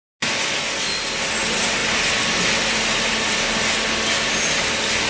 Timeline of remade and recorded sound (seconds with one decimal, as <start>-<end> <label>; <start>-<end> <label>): 0.0-5.1 recorded